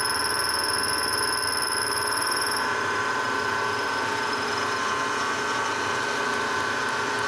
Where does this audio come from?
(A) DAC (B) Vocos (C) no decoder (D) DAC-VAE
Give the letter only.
C